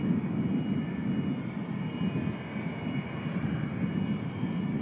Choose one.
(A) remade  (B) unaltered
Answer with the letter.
B